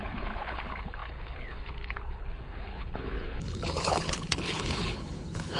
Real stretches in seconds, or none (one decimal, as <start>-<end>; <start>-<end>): none